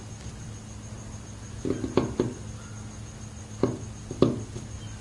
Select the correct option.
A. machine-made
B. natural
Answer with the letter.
B